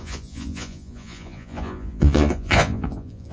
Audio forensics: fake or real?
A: fake